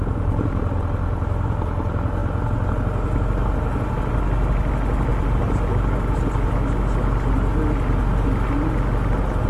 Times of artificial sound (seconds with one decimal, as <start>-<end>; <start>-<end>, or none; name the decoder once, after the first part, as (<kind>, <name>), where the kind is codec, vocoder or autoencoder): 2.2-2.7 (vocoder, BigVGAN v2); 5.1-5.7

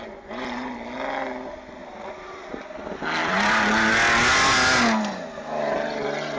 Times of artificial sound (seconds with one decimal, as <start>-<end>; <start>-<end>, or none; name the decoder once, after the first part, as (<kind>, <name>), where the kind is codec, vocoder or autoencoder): 1.8-2.8 (vocoder, BigVGAN v2); 3.2-3.9

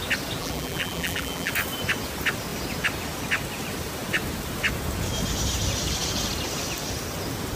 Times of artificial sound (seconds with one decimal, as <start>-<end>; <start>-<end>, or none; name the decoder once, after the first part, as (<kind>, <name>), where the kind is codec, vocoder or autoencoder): 0.4-1.5 (vocoder, BigVGAN v2)